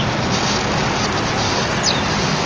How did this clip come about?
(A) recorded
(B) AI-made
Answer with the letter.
A